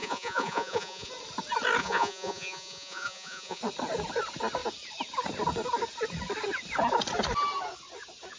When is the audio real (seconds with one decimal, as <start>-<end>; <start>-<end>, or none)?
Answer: 1.1-1.8; 3.6-8.4